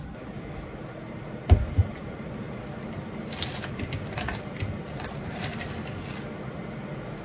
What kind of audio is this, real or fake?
real